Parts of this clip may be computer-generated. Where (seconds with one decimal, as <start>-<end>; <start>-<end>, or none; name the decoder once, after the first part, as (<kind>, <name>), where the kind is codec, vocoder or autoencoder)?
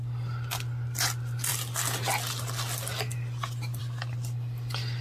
none